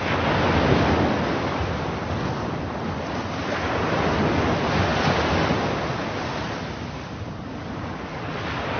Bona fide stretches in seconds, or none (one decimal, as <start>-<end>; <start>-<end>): 0.0-8.8